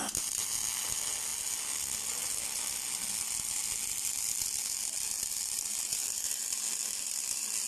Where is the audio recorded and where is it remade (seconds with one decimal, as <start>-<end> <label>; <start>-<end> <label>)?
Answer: 0.0-7.7 recorded